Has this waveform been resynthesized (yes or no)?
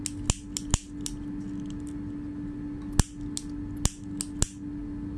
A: no